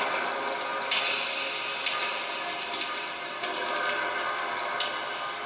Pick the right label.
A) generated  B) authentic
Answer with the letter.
B